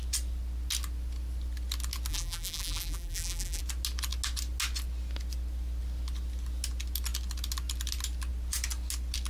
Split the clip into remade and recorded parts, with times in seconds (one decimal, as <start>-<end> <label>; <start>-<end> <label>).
0.0-2.1 recorded; 2.1-3.6 remade; 3.6-9.3 recorded